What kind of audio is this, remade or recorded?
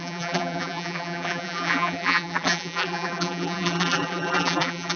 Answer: remade